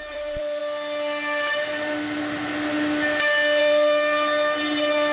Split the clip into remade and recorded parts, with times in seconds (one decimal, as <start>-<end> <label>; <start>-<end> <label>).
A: 0.0-0.6 remade; 0.6-3.6 recorded; 3.6-5.1 remade